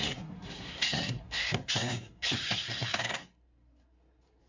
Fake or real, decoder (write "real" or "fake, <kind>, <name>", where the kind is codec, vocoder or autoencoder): fake, codec, SNAC